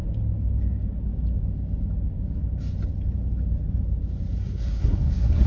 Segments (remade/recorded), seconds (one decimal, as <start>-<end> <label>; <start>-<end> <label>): 0.0-4.4 recorded; 4.4-5.5 remade